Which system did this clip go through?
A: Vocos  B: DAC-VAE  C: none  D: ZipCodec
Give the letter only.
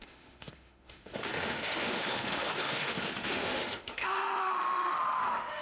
B